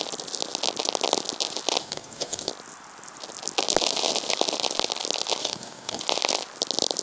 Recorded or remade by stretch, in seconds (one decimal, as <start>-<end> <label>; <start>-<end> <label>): 0.0-1.8 recorded; 1.8-2.5 remade; 2.5-5.4 recorded; 5.4-6.0 remade; 6.0-7.0 recorded